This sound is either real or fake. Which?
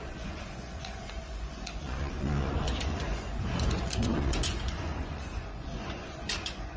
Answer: fake